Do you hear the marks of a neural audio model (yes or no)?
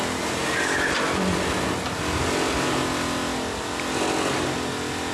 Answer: no